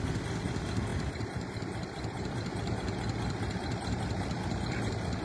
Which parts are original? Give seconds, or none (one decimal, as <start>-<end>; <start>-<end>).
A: 0.0-5.2